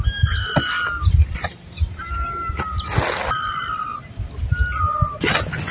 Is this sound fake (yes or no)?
no